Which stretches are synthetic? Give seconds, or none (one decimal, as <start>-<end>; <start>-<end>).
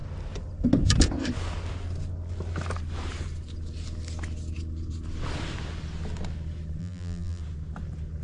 6.8-7.4